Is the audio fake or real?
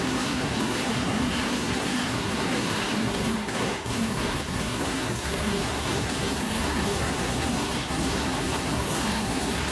fake